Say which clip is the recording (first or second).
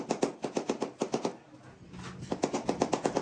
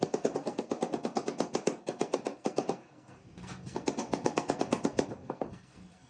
first